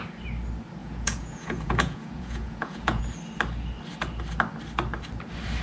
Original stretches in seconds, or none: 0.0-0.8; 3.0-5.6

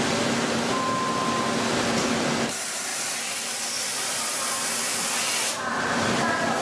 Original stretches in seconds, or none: 0.0-6.6

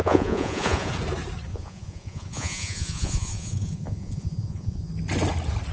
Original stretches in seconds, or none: 0.9-1.5; 4.9-5.7

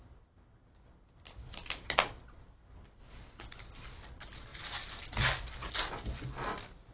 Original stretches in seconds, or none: 0.0-6.9

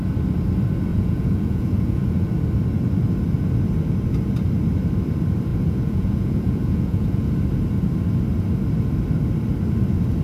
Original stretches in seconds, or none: 0.0-0.9; 2.3-5.5; 7.3-10.2

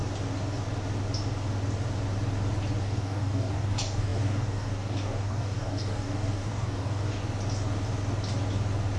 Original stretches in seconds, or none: 0.0-2.8; 7.2-9.0

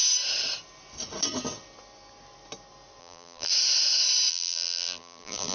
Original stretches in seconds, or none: 0.0-3.0; 3.5-4.3

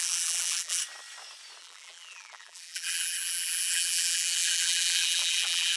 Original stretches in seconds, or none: 0.8-1.6